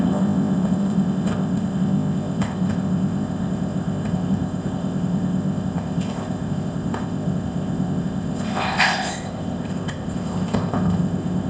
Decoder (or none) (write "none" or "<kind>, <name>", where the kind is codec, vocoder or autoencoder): codec, ZipCodec